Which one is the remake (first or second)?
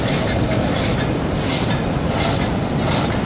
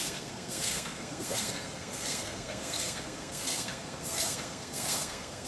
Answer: second